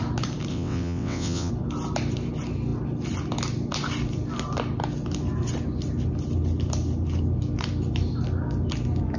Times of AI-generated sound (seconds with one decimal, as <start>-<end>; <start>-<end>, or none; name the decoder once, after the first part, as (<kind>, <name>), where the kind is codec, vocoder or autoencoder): 0.5-1.5 (vocoder, WaveNeXt)